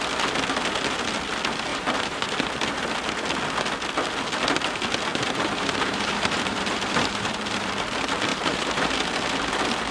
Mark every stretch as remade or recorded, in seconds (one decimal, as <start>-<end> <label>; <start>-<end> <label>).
0.0-1.7 recorded; 1.7-2.2 remade; 2.2-5.1 recorded; 5.1-7.7 remade; 7.7-8.3 recorded; 8.3-8.9 remade; 8.9-9.9 recorded